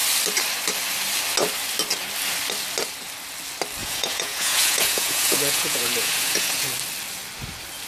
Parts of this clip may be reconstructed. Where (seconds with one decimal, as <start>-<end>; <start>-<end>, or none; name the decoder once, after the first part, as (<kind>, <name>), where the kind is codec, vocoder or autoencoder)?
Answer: 3.8-6.7 (vocoder, Vocos)